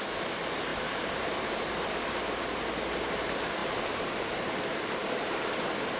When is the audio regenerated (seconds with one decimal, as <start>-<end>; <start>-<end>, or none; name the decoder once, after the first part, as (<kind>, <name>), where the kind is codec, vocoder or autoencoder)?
0.7-1.7 (vocoder, BigVGAN v2); 3.6-4.3; 5.0-5.6